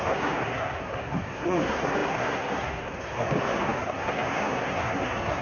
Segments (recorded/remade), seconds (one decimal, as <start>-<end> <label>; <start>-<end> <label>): 0.0-5.4 remade